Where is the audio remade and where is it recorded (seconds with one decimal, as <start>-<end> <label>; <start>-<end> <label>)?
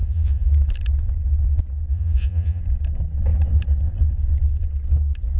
0.0-0.5 remade; 0.5-1.9 recorded; 1.9-2.6 remade; 2.6-5.4 recorded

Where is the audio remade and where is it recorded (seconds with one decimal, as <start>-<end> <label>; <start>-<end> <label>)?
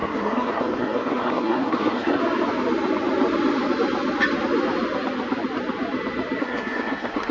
0.0-2.2 remade; 2.2-6.4 recorded; 6.4-7.3 remade